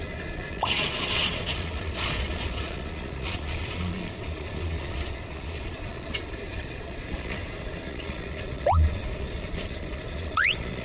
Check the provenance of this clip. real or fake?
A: fake